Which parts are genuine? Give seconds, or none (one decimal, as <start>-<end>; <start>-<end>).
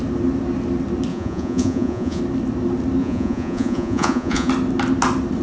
0.0-1.1; 2.2-3.0; 4.5-5.4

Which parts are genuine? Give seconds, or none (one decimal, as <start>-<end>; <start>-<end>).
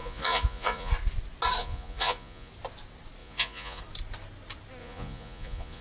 0.9-1.6; 2.5-3.2; 3.8-4.8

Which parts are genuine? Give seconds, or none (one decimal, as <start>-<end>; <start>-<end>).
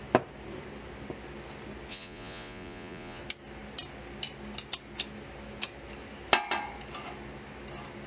0.0-1.9; 3.2-8.1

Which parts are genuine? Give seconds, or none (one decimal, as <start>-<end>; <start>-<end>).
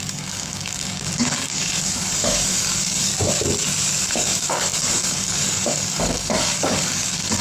3.1-4.0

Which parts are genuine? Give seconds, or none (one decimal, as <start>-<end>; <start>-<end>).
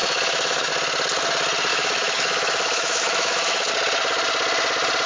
0.7-1.7; 3.7-5.1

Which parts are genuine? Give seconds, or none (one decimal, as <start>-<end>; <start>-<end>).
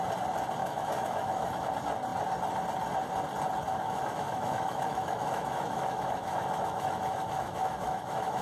0.0-0.6; 1.7-3.7